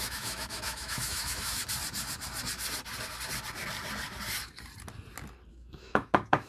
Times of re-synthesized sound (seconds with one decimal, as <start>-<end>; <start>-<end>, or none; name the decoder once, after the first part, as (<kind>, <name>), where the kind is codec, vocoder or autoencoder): 0.0-1.6 (autoencoder, DAC-VAE); 5.5-6.5